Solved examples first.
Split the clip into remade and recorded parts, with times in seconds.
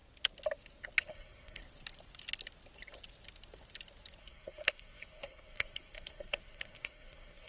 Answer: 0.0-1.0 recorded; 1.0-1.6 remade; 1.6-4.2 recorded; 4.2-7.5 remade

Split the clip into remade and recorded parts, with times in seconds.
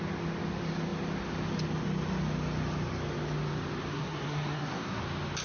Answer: 0.0-3.9 recorded; 3.9-5.0 remade; 5.0-5.4 recorded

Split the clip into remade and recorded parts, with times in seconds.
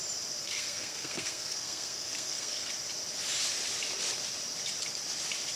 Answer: 0.0-0.4 recorded; 0.4-2.7 remade; 2.7-5.6 recorded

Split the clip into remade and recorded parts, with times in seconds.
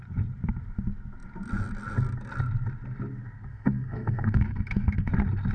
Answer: 0.0-3.5 recorded; 3.5-5.1 remade; 5.1-5.5 recorded